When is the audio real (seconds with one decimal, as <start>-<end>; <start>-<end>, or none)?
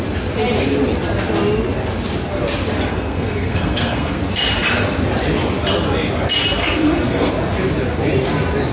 0.0-2.9; 4.2-6.6; 7.3-8.7